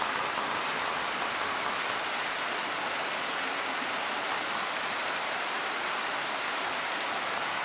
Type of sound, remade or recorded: recorded